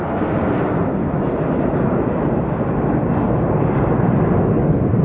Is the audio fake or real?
real